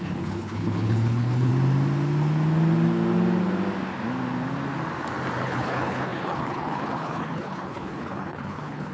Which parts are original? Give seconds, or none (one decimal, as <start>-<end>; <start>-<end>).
1.5-5.4